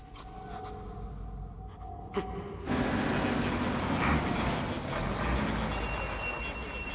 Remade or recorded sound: recorded